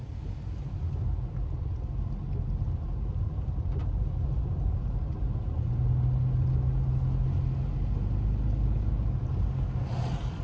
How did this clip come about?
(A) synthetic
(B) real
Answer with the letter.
B